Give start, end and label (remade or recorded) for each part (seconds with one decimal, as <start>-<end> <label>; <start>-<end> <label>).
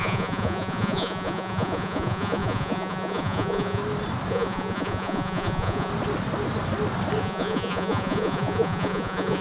0.0-3.8 remade; 3.8-4.3 recorded; 4.3-5.9 remade; 5.9-7.2 recorded; 7.2-9.4 remade